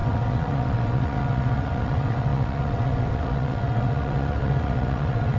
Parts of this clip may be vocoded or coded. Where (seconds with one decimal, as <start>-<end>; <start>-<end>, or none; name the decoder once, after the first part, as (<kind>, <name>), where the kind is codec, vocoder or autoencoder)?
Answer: 0.0-5.4 (vocoder, WaveNeXt)